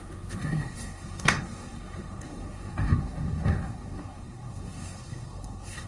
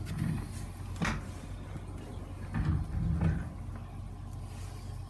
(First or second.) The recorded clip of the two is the second